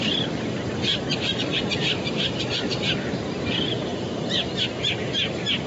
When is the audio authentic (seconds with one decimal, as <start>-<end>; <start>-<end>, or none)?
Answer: 0.0-1.1; 4.5-5.7